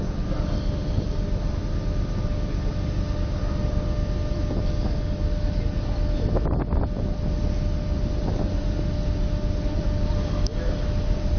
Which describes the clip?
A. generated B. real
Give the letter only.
B